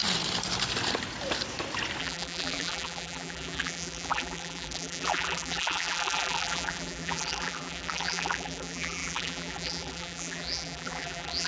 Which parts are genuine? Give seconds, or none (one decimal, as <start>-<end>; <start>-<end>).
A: 0.0-2.0